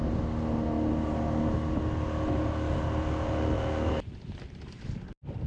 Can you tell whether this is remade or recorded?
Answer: recorded